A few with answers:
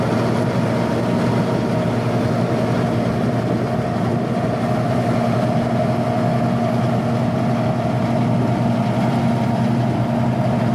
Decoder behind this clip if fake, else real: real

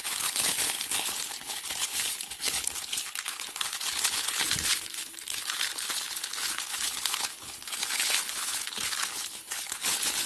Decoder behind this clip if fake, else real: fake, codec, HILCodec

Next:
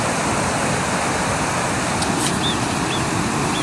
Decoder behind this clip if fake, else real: real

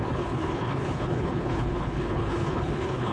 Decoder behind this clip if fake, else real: fake, codec, HILCodec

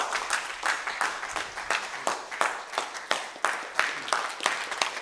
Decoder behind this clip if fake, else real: fake, vocoder, BigVGAN v2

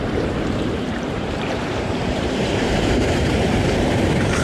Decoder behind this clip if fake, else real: fake, vocoder, BigVGAN v2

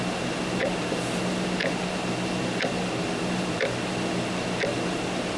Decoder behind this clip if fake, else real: real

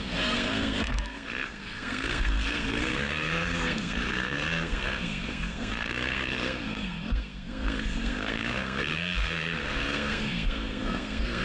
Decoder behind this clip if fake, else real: fake, codec, SNAC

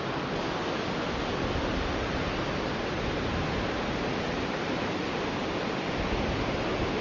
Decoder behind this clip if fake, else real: real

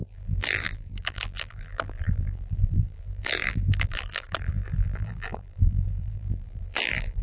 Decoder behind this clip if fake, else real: fake, vocoder, BigVGAN v2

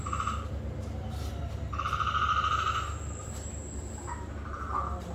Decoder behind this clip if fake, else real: real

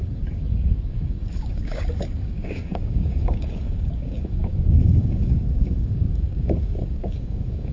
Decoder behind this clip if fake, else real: fake, codec, DAC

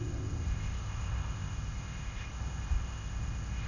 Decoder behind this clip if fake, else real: fake, codec, ZipCodec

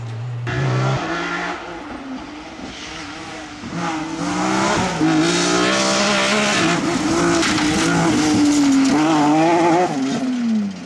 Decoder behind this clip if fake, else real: real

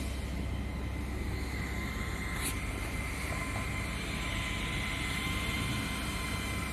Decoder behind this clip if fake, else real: real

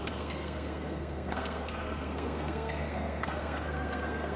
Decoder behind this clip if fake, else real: fake, codec, SNAC